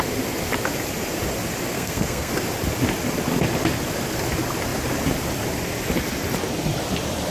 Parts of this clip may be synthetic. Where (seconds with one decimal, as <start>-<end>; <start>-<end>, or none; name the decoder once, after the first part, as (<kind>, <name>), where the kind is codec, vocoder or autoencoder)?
1.7-2.3 (codec, SNAC)